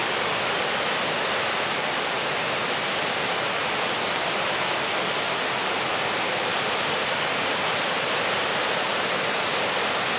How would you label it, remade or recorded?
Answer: recorded